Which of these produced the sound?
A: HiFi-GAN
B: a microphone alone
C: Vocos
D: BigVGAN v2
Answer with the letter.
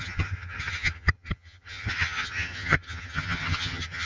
A